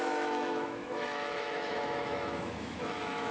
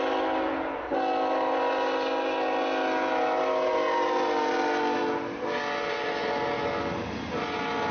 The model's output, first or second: first